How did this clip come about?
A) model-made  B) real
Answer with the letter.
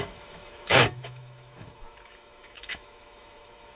A